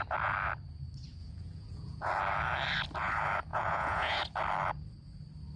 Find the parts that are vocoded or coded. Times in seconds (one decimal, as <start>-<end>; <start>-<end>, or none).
1.2-2.1; 3.5-4.2